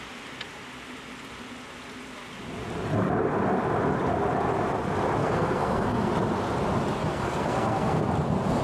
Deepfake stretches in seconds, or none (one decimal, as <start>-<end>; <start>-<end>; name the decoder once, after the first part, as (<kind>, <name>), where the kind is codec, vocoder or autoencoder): 5.2-6.1 (codec, SNAC); 7.0-8.0